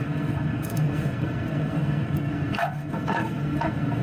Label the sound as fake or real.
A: fake